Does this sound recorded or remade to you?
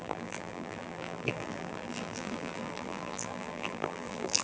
remade